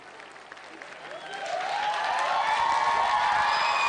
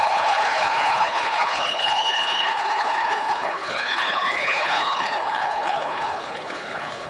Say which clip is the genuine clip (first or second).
first